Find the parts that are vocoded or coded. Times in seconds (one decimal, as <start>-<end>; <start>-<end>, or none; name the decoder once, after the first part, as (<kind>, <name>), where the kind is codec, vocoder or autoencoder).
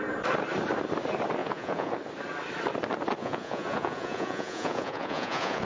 1.4-1.9 (vocoder, Vocos); 3.2-5.6